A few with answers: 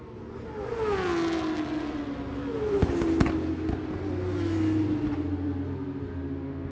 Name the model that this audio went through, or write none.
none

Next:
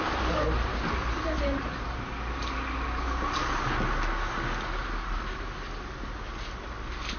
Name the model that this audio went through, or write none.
none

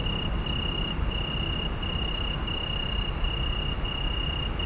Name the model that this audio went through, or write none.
none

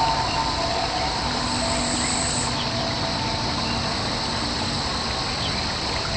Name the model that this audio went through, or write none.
none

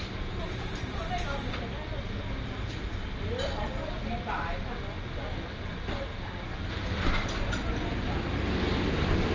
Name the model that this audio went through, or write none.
none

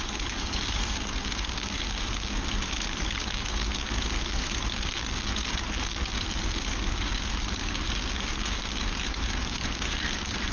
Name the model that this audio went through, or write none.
codec, DAC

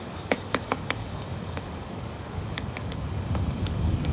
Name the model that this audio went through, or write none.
codec, DAC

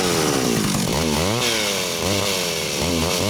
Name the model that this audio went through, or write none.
none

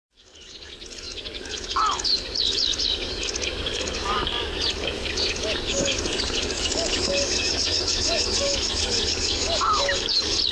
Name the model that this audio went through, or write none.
codec, DAC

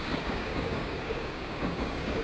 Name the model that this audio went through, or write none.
codec, DAC